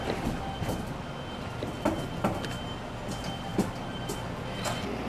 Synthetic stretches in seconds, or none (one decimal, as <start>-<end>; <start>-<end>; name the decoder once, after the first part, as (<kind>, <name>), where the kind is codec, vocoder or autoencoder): none